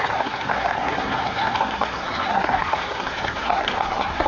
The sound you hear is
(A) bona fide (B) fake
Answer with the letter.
B